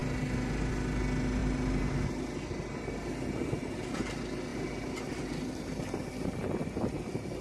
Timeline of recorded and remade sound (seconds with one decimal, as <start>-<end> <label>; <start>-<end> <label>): 0.0-1.4 recorded; 1.4-2.1 remade; 2.1-7.4 recorded